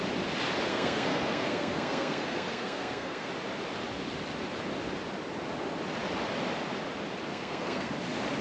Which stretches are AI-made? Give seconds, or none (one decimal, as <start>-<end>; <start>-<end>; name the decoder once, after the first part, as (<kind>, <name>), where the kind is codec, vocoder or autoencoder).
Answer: 0.7-3.3 (codec, SNAC); 7.3-7.9